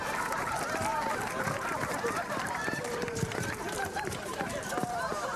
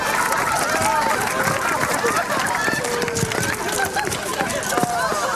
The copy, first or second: first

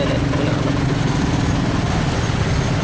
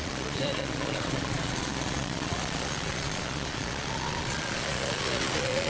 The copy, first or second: second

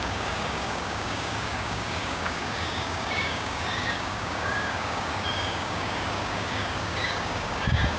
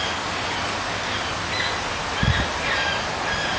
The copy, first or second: first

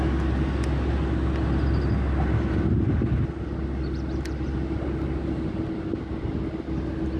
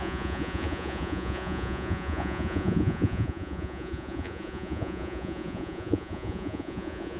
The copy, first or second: second